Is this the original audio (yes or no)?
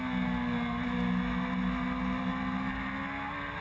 yes